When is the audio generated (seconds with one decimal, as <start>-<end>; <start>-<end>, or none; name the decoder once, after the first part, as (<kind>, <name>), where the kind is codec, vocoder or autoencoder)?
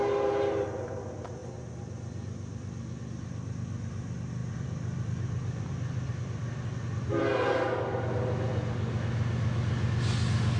4.4-7.2 (vocoder, BigVGAN v2)